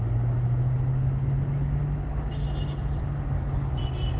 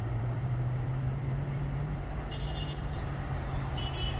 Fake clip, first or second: second